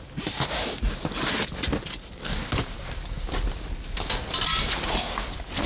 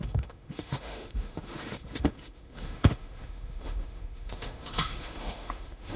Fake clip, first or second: second